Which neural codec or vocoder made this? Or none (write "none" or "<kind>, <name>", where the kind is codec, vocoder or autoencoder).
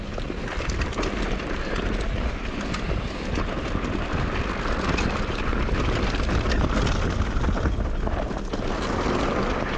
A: none